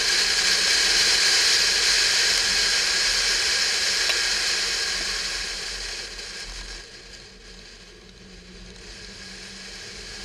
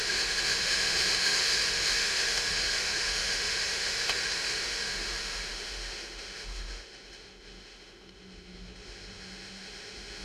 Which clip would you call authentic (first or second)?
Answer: first